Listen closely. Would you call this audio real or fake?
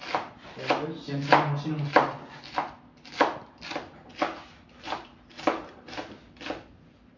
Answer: real